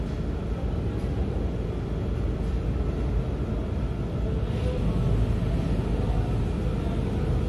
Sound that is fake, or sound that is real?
real